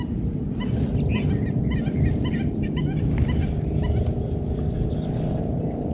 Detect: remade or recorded recorded